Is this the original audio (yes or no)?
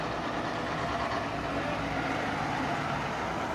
yes